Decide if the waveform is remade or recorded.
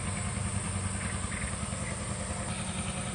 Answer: recorded